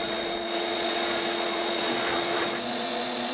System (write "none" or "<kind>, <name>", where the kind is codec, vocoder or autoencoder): vocoder, Vocos